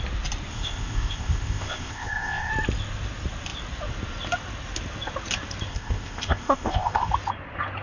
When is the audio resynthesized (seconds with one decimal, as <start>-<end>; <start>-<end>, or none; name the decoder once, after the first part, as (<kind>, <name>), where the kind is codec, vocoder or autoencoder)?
0.5-2.5 (codec, ZipCodec); 5.7-7.1